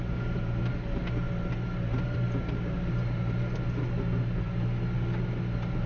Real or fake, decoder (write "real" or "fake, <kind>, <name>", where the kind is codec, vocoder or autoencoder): real